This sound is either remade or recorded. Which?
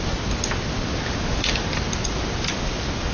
recorded